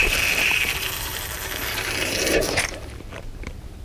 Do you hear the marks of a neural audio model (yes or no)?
yes